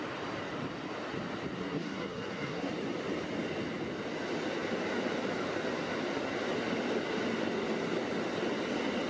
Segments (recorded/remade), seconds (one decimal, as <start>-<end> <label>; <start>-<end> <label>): 0.0-1.6 recorded; 1.6-2.7 remade; 2.7-9.1 recorded